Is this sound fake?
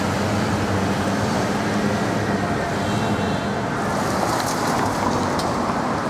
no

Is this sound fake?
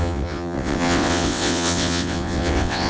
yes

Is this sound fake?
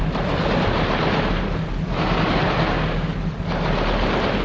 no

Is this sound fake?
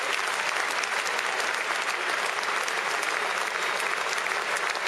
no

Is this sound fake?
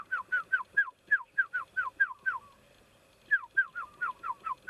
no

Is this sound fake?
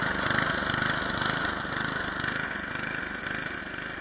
no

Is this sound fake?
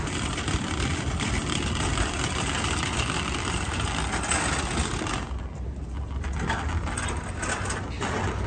no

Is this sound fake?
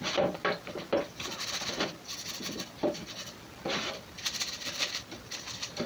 yes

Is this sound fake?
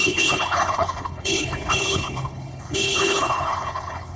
yes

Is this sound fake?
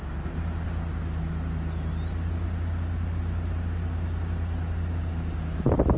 no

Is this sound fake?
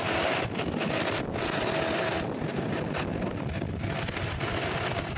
no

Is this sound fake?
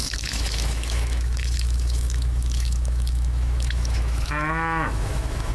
yes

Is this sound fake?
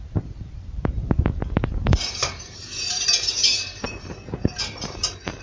yes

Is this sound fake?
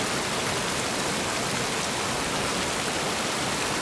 no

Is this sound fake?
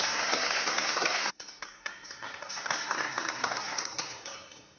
yes